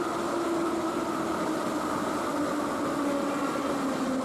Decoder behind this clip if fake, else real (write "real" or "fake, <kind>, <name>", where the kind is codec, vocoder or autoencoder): real